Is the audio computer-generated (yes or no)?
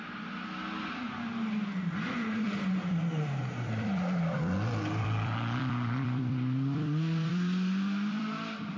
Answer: yes